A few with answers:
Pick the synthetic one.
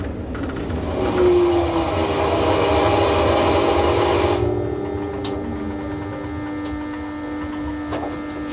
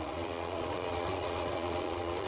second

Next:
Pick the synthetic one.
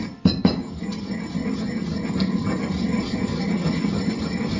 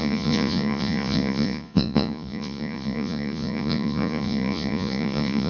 second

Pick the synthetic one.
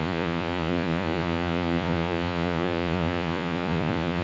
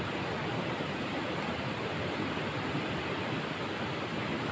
first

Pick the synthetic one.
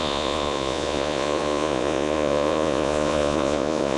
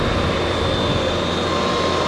first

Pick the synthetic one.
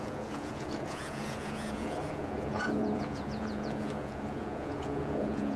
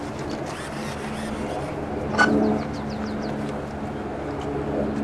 first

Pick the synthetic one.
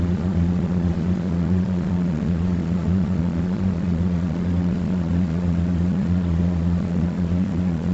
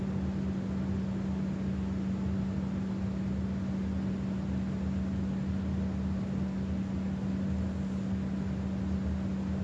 first